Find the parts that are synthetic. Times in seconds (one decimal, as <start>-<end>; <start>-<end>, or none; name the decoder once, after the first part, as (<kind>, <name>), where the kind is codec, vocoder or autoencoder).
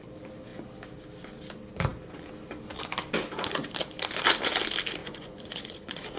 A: 5.0-6.2 (vocoder, Vocos)